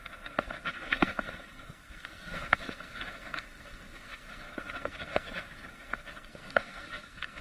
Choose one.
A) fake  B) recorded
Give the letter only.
A